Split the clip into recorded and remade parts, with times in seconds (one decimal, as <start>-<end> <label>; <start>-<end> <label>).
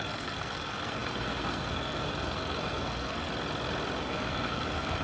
0.0-3.3 remade; 3.3-4.0 recorded; 4.0-5.0 remade